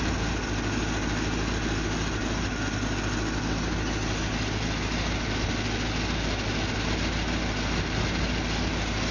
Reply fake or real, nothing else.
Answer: real